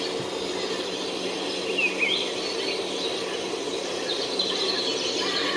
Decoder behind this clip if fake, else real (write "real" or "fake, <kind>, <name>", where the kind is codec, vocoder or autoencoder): real